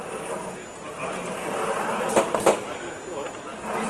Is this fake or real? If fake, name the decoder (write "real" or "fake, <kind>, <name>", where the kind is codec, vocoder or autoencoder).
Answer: real